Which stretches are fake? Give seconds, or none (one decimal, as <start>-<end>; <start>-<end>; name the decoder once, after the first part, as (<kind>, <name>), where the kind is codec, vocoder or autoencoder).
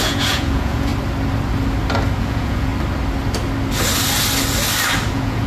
0.0-0.9 (vocoder, Vocos); 2.2-2.7; 5.1-5.5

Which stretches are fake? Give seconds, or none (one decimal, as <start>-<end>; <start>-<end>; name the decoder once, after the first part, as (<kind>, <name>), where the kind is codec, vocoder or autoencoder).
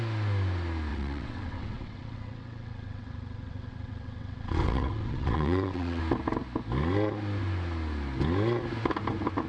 0.9-6.0 (vocoder, WaveNeXt)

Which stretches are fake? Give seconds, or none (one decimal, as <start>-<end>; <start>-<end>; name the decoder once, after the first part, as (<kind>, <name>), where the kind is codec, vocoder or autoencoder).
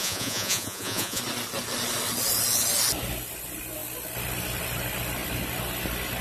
0.0-1.2 (vocoder, Vocos)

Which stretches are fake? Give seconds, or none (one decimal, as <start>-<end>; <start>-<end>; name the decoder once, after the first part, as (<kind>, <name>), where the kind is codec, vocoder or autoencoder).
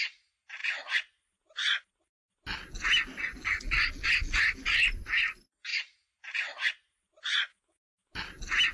7.5-8.2 (autoencoder, DAC-VAE)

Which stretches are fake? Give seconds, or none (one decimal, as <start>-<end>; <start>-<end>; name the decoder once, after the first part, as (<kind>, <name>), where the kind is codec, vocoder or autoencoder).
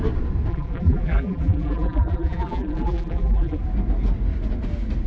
0.5-3.6 (vocoder, BigVGAN v2)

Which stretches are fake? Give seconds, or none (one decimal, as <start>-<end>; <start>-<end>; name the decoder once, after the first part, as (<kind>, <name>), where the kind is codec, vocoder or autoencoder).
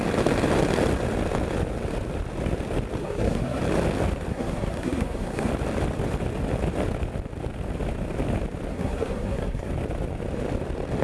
3.0-3.6 (codec, SNAC); 4.3-5.5; 8.7-9.7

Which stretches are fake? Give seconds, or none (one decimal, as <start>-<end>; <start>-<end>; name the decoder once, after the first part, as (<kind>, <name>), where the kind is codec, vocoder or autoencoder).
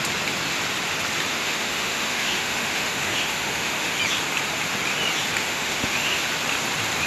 1.3-4.0 (autoencoder, DAC-VAE); 5.4-6.2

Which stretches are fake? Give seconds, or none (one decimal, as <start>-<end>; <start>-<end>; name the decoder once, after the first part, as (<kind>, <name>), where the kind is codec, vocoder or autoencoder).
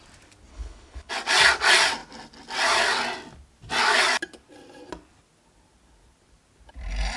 0.5-1.1 (codec, HILCodec)